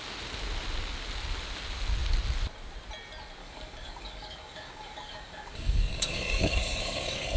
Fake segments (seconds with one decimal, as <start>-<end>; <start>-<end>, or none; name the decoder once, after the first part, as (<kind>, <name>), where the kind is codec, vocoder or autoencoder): 3.4-7.4 (codec, DAC)